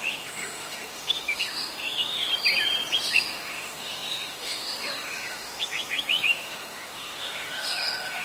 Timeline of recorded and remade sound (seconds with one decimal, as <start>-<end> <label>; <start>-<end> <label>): 0.0-2.3 remade; 2.3-3.1 recorded; 3.1-8.2 remade